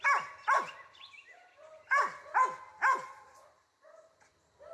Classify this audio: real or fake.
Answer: real